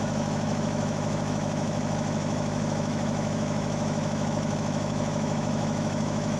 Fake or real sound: fake